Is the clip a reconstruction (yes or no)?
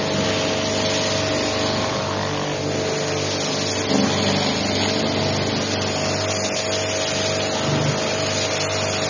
no